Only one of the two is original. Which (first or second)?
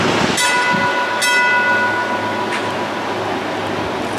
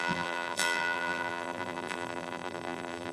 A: first